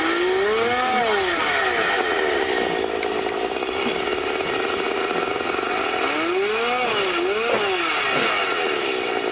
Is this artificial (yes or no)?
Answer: no